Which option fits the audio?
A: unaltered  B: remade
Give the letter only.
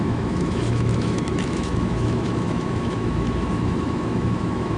B